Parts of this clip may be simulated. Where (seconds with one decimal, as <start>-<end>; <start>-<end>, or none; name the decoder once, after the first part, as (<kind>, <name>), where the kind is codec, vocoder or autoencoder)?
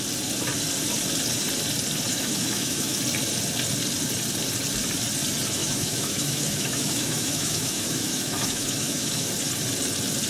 2.1-3.0 (autoencoder, DAC-VAE); 5.6-9.3